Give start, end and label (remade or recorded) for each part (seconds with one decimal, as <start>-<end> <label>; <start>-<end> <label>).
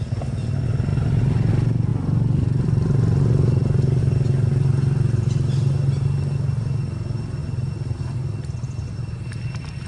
0.0-9.9 recorded